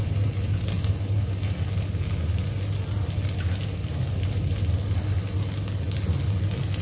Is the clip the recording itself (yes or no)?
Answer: yes